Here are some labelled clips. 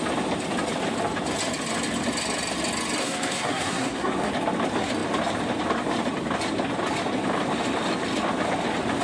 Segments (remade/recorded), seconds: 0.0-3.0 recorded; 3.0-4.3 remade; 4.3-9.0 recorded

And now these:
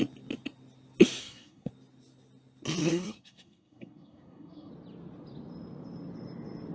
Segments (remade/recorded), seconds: 0.0-1.2 recorded; 1.2-1.7 remade; 1.7-2.8 recorded; 2.8-4.7 remade; 4.7-6.7 recorded

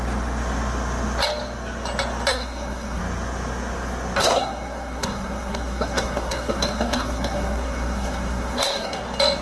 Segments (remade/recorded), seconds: 0.0-2.3 recorded; 2.3-3.0 remade; 3.0-4.2 recorded; 4.2-9.0 remade; 9.0-9.4 recorded

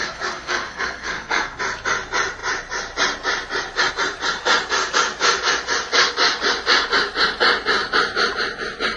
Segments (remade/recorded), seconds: 0.0-1.6 remade; 1.6-9.0 recorded

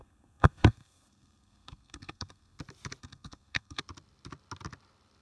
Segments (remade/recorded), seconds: 0.0-2.6 remade; 2.6-3.0 recorded; 3.0-3.8 remade; 3.8-5.2 recorded